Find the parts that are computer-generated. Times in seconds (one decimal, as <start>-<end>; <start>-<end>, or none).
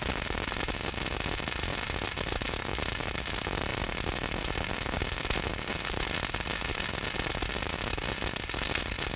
none